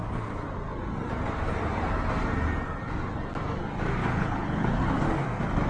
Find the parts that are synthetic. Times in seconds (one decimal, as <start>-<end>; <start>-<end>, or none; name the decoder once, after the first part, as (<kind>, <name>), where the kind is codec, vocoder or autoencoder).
4.0-4.9 (codec, HILCodec)